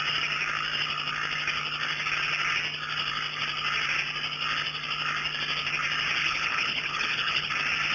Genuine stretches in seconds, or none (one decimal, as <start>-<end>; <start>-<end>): 0.0-6.2; 7.5-7.9